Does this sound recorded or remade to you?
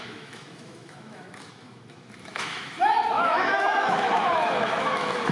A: remade